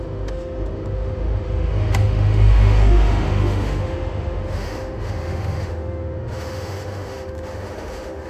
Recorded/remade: remade